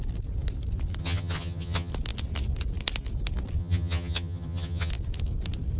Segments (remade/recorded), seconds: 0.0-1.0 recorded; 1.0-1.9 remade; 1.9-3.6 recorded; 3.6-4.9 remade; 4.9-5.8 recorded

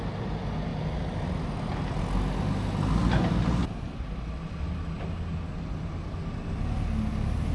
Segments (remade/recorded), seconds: 0.0-7.5 recorded

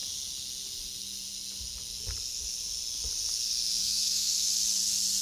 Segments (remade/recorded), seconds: 0.0-3.8 recorded; 3.8-4.5 remade; 4.5-5.2 recorded

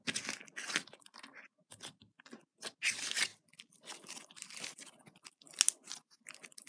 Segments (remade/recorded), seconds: 0.0-6.7 recorded

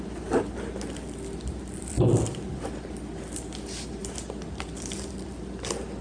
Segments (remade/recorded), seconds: 0.0-6.0 recorded

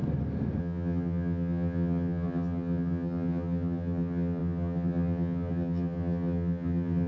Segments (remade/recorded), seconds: 0.0-0.6 recorded; 0.6-7.1 remade